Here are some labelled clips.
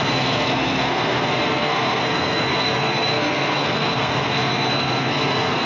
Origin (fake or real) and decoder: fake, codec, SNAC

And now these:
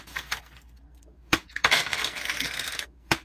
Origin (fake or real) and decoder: fake, codec, SNAC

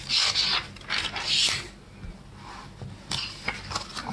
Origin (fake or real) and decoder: real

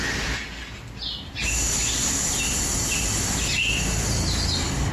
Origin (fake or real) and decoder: real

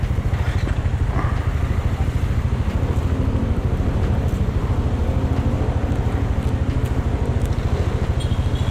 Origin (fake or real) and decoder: real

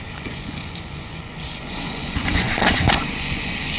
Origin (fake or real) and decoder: fake, vocoder, Vocos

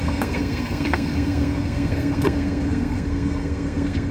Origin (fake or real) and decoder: fake, codec, SNAC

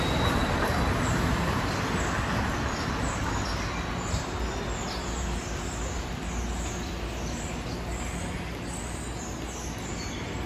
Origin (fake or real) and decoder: real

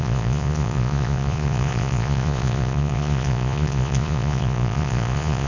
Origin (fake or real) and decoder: fake, vocoder, Vocos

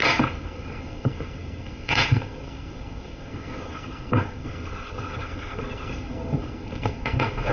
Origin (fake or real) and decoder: fake, codec, SNAC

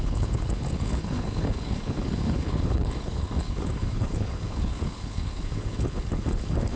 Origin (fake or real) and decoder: fake, codec, HILCodec